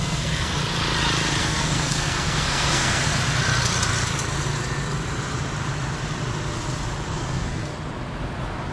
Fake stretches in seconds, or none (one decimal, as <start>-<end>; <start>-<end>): 0.0-0.6; 1.4-3.1; 7.1-7.7